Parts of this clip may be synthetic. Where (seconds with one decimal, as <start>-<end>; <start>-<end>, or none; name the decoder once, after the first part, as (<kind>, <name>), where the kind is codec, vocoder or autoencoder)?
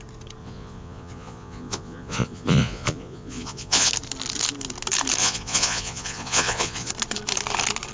0.4-3.9 (vocoder, Vocos); 5.2-6.9